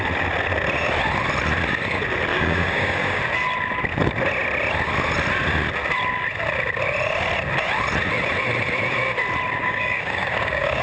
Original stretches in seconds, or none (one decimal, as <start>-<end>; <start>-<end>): 0.0-2.3; 3.2-9.6